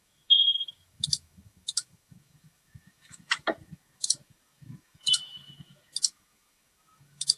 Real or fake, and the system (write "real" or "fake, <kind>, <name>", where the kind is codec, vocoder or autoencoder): fake, autoencoder, DAC-VAE